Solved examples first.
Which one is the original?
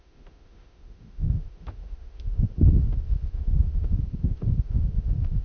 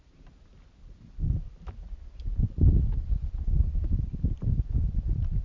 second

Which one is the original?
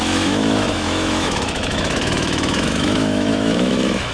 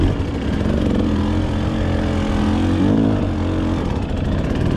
second